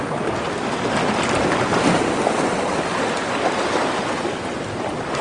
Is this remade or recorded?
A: recorded